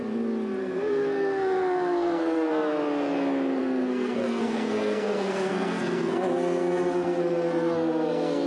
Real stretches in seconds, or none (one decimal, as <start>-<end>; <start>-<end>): 0.0-0.6; 2.5-3.6